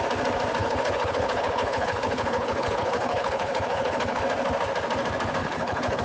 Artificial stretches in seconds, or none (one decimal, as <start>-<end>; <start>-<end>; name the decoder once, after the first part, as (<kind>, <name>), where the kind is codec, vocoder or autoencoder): 0.6-4.2 (codec, HILCodec); 5.4-6.0